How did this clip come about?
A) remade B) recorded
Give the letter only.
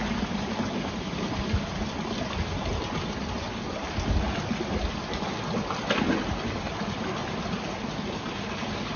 B